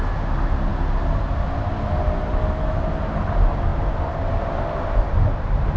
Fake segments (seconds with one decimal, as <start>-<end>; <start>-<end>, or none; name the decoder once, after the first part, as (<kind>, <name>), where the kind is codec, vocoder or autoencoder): none